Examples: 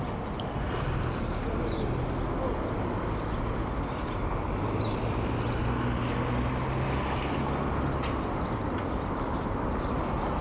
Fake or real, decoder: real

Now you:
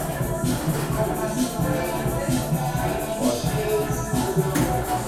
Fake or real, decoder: real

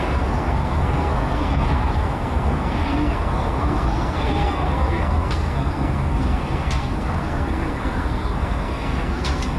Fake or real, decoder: fake, codec, SNAC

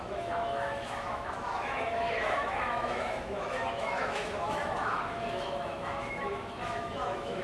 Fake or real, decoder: fake, autoencoder, DAC-VAE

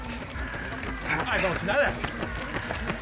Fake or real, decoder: real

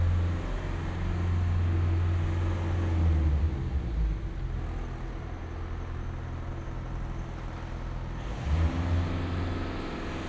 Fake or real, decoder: real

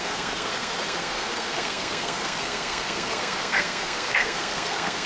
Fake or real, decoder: fake, codec, SNAC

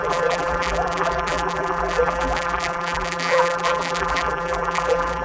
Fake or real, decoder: fake, vocoder, BigVGAN v2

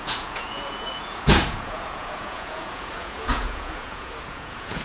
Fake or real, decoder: fake, vocoder, Vocos